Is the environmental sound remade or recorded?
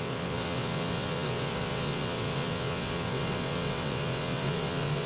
remade